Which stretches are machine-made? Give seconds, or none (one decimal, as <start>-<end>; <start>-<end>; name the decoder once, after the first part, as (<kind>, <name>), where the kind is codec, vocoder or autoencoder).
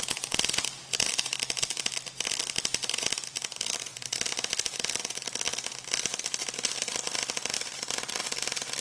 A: none